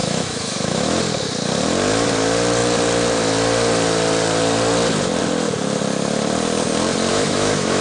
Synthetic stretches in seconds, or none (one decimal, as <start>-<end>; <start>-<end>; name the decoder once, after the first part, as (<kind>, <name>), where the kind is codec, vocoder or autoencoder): 0.0-1.0 (autoencoder, DAC-VAE); 7.1-7.8